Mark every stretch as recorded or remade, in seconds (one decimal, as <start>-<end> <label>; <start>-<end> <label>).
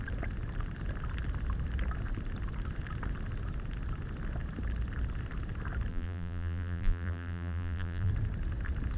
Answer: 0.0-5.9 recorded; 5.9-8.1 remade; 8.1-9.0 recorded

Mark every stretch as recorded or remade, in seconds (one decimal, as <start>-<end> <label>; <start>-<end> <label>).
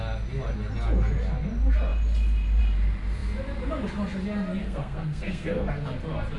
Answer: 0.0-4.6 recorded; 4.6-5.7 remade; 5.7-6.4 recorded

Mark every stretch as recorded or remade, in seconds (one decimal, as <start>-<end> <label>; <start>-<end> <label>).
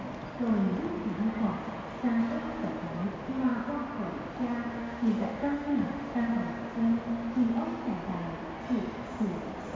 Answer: 0.0-4.8 recorded; 4.8-6.2 remade; 6.2-9.7 recorded